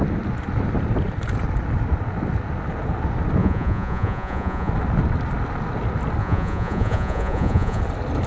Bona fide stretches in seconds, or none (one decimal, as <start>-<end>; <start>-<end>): 0.0-3.4; 4.7-6.2; 7.8-8.3